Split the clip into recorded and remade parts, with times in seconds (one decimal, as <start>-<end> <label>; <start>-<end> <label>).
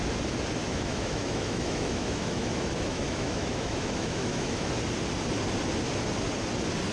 0.0-0.6 recorded; 0.6-4.7 remade; 4.7-6.9 recorded